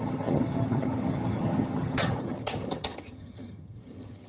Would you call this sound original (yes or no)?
no